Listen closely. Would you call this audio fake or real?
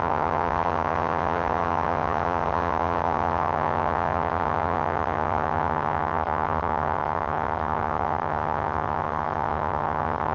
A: fake